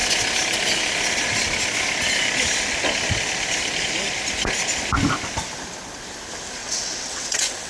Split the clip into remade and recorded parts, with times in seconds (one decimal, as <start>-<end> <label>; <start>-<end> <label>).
0.0-6.6 recorded; 6.6-7.7 remade